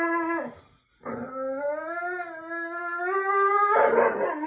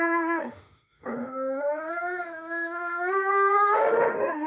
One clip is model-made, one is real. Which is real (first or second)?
first